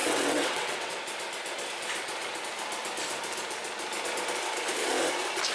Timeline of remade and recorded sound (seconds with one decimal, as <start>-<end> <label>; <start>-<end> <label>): 0.0-0.9 remade; 0.9-5.5 recorded